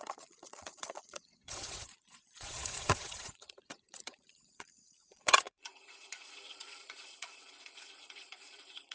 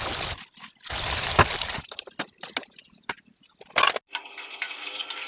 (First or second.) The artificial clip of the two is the first